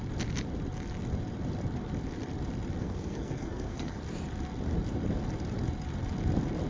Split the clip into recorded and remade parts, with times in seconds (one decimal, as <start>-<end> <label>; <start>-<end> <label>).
0.0-2.8 recorded; 2.8-4.0 remade; 4.0-6.7 recorded